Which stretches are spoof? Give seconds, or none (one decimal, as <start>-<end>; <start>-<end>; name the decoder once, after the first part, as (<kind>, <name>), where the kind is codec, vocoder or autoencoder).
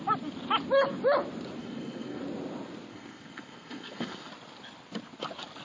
1.6-2.2 (codec, SNAC); 2.9-4.3